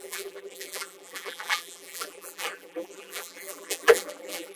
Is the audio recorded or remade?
remade